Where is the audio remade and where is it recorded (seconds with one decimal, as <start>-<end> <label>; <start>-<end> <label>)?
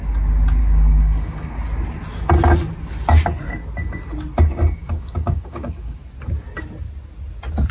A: 0.0-0.6 recorded; 0.6-1.5 remade; 1.5-4.8 recorded; 4.8-6.0 remade; 6.0-7.7 recorded